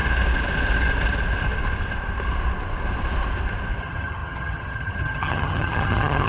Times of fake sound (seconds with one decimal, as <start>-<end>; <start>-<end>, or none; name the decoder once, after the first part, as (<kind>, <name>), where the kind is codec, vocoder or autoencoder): 3.8-6.3 (vocoder, HiFi-GAN)